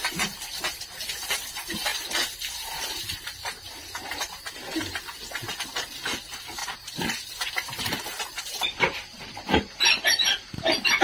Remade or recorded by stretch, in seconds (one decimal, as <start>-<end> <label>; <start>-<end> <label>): 0.0-6.6 remade; 6.6-7.5 recorded; 7.5-11.0 remade